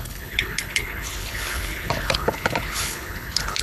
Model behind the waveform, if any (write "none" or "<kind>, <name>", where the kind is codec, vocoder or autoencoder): codec, HILCodec